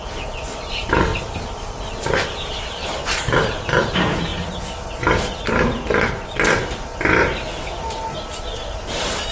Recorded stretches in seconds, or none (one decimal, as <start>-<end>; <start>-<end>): 4.3-8.4